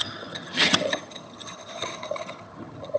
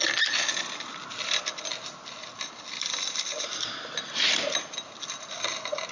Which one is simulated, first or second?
first